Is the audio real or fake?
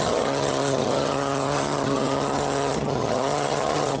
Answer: fake